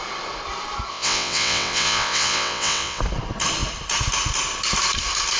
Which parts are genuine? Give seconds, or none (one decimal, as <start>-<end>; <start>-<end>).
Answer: 0.0-0.9; 3.0-5.4